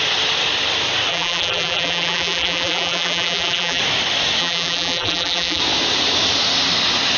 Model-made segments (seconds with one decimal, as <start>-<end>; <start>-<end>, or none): 1.1-3.8; 4.4-5.6